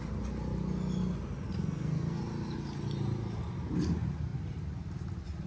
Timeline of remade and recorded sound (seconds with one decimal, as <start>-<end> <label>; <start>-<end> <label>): 0.0-1.6 recorded; 1.6-2.2 remade; 2.2-5.5 recorded